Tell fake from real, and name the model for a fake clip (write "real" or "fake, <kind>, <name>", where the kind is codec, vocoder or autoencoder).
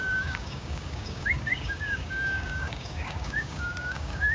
fake, codec, DAC